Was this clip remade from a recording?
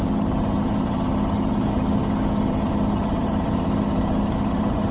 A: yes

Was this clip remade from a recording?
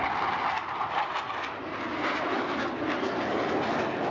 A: no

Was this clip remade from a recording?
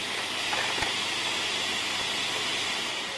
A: no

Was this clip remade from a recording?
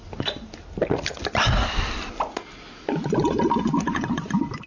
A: no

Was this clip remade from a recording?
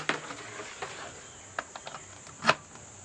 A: no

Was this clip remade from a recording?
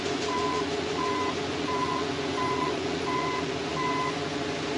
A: yes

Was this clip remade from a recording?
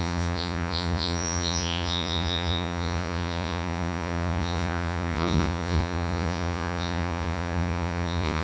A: yes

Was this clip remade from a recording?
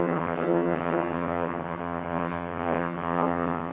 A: yes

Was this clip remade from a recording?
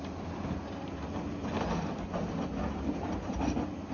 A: no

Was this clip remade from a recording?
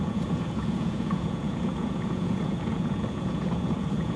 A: yes